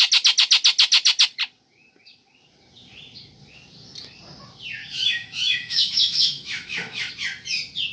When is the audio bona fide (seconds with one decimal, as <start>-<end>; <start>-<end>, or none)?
0.0-4.8; 7.1-7.9